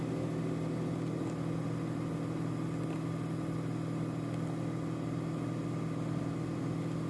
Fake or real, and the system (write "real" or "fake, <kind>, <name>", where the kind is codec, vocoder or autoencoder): real